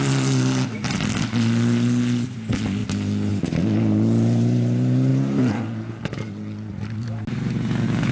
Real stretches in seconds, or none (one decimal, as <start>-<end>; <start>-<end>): 0.0-8.1